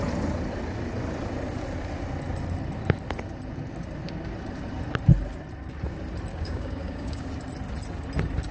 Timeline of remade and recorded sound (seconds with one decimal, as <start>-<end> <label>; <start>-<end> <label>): 0.0-6.3 recorded; 6.3-7.2 remade; 7.2-8.5 recorded

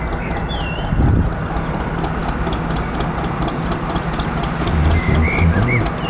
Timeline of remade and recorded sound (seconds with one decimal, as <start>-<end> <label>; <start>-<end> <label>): 0.0-6.1 recorded

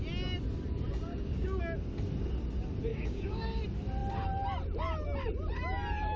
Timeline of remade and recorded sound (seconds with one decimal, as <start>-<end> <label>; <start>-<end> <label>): 0.0-1.1 recorded; 1.1-1.6 remade; 1.6-2.9 recorded; 2.9-3.6 remade; 3.6-6.2 recorded

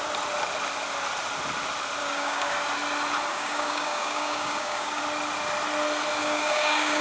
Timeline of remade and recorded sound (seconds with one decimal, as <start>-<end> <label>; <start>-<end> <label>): 0.0-2.0 recorded; 2.0-2.5 remade; 2.5-3.3 recorded; 3.3-5.0 remade; 5.0-6.2 recorded; 6.2-7.0 remade

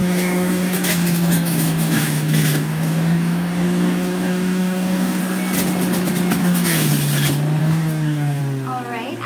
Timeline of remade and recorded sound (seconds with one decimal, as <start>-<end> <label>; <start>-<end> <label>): 0.0-5.2 remade; 5.2-6.4 recorded; 6.4-6.9 remade; 6.9-7.6 recorded; 7.6-8.4 remade; 8.4-9.3 recorded

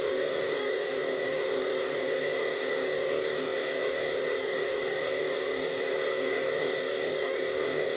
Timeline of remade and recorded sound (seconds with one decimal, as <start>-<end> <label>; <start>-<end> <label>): 0.0-8.0 remade

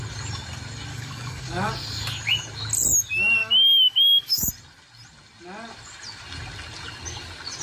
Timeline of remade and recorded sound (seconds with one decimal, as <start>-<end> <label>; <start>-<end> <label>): 0.0-0.9 recorded; 0.9-1.7 remade; 1.7-3.4 recorded; 3.4-4.5 remade; 4.5-7.6 recorded